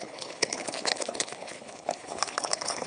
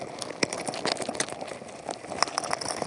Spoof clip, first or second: first